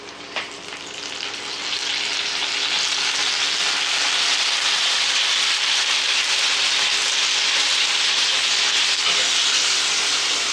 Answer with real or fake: real